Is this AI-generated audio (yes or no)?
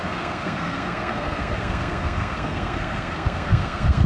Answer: yes